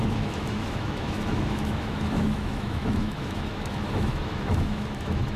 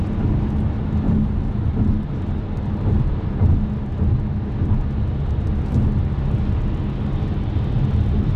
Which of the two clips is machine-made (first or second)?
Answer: first